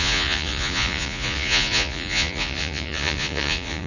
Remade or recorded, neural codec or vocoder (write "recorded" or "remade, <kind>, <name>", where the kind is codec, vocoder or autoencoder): remade, vocoder, Vocos